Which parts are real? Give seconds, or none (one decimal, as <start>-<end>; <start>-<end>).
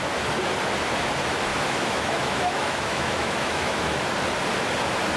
0.0-1.5; 4.0-5.2